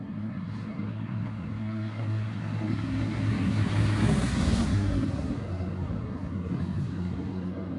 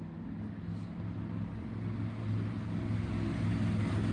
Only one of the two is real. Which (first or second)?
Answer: second